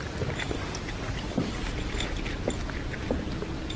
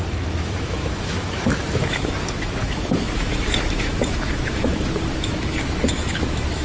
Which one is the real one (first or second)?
first